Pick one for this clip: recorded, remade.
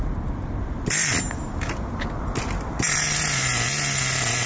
recorded